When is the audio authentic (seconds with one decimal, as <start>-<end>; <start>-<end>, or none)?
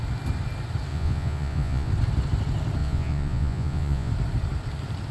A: 0.0-0.9; 1.9-2.8; 4.1-5.1